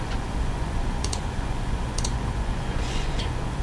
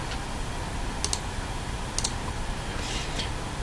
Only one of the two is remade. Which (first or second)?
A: first